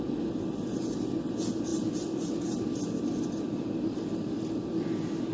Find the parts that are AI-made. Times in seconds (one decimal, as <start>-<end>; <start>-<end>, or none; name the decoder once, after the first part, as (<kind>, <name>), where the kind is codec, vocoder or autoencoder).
none